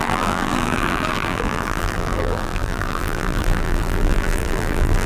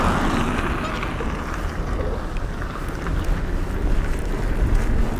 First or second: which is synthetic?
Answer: first